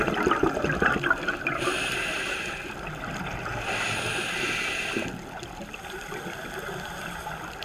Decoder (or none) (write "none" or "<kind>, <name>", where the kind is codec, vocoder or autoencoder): none